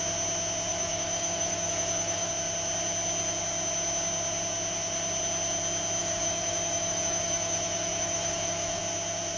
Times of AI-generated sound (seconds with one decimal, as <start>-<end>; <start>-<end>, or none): 0.7-2.3; 6.0-8.8